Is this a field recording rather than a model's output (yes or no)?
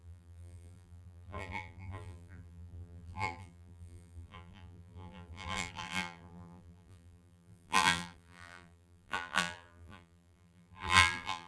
no